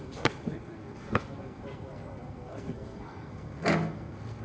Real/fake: fake